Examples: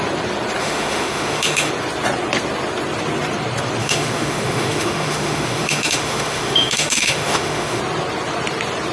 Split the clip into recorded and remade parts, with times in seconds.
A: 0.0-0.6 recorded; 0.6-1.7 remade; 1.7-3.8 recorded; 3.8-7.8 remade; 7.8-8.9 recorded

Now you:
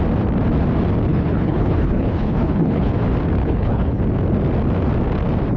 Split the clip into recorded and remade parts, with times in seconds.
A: 0.0-1.1 recorded; 1.1-2.9 remade; 2.9-3.4 recorded; 3.4-4.0 remade; 4.0-5.6 recorded

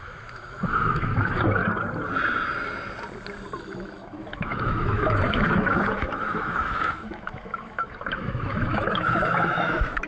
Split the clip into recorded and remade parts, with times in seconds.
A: 0.0-1.6 remade; 1.6-3.6 recorded; 3.6-10.1 remade

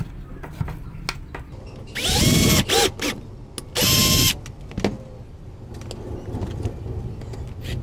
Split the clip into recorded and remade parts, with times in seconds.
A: 0.0-7.8 recorded

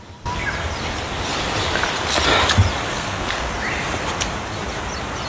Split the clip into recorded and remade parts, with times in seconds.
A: 0.0-2.9 recorded; 2.9-3.5 remade; 3.5-5.3 recorded

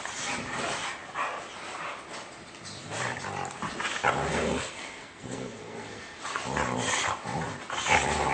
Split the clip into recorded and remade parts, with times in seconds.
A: 0.0-4.3 recorded; 4.3-6.2 remade; 6.2-8.3 recorded

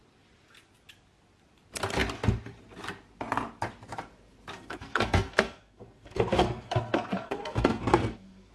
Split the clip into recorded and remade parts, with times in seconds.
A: 0.0-4.5 recorded; 4.5-8.5 remade